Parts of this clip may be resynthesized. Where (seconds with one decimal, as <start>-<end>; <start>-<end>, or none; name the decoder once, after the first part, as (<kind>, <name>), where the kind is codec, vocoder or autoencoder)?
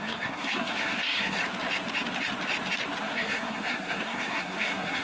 0.0-1.4 (codec, SNAC); 3.0-5.0